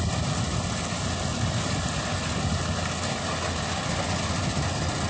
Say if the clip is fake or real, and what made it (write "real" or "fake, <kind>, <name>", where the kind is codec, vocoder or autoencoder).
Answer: real